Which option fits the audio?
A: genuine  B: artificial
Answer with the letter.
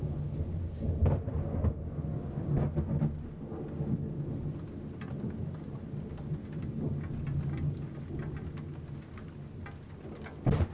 A